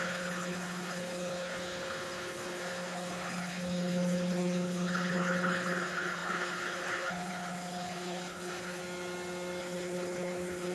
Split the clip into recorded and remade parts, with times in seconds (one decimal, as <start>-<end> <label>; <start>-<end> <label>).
0.0-8.8 remade; 8.8-9.6 recorded; 9.6-10.7 remade